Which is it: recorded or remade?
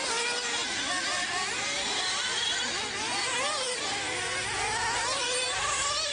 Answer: recorded